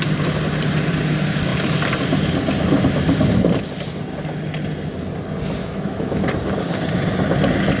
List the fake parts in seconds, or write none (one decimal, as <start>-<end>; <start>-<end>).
5.6-6.3